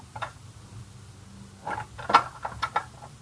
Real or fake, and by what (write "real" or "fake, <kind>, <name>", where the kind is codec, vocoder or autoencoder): real